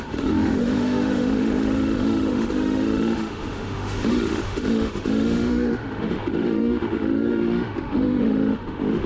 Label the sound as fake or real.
fake